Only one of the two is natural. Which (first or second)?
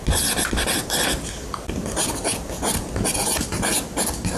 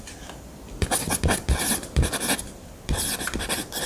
first